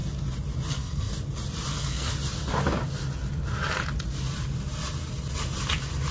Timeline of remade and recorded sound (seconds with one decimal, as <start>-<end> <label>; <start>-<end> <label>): 0.0-0.7 recorded; 0.7-1.1 remade; 1.1-1.7 recorded; 1.7-2.1 remade; 2.1-6.1 recorded